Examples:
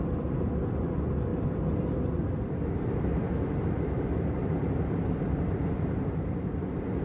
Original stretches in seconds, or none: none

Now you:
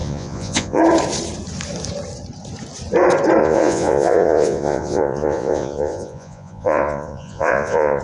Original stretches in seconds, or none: 0.8-3.4

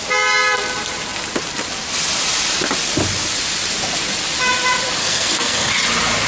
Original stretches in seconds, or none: 0.0-5.0; 5.7-6.3